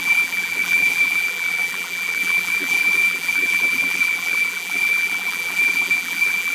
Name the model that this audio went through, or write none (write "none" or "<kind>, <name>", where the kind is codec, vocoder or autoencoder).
vocoder, BigVGAN v2